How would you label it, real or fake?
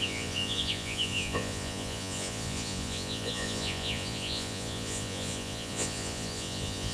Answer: fake